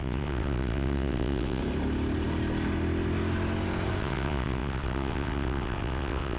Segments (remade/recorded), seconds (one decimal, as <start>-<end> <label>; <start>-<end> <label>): 0.0-1.6 remade; 1.6-4.0 recorded; 4.0-6.4 remade